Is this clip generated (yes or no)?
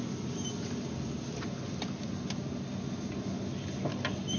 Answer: no